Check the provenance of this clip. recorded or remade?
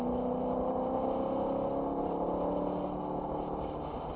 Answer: recorded